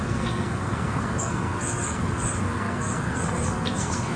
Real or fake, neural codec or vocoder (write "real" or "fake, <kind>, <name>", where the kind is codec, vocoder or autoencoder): fake, codec, SNAC